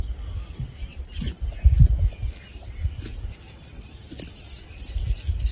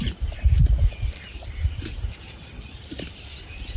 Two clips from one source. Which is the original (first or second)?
first